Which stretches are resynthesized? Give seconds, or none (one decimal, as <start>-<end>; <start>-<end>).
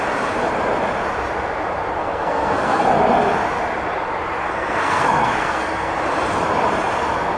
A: 2.0-2.8; 4.4-5.9